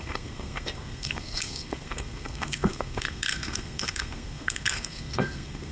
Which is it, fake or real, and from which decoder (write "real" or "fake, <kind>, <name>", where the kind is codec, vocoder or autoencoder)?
fake, codec, SNAC